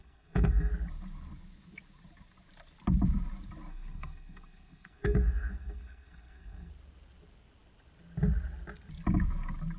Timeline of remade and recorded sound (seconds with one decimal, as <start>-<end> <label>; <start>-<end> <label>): 0.0-0.7 remade; 0.7-3.7 recorded; 3.7-6.7 remade; 6.7-9.8 recorded